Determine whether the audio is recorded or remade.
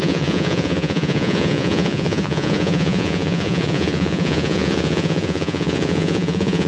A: remade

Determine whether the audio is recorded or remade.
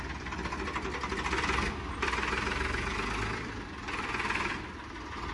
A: recorded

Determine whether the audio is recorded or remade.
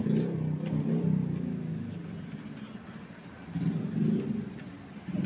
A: recorded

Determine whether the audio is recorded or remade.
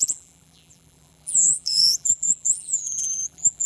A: remade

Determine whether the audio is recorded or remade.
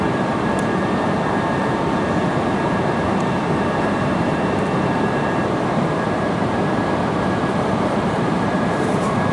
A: remade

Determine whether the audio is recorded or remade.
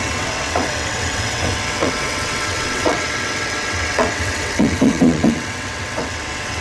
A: remade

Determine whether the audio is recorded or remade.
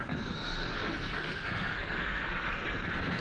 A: remade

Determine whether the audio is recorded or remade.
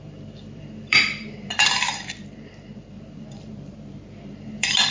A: remade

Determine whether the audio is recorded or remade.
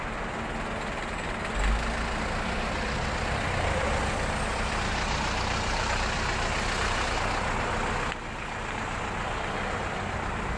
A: recorded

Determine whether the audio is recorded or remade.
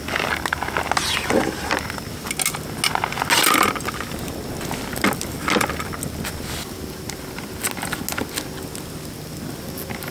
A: recorded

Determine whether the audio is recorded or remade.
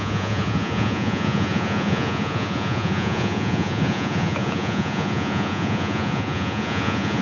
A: remade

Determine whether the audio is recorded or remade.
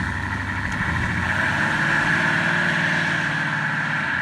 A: recorded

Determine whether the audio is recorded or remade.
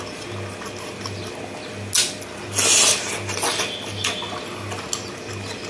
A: recorded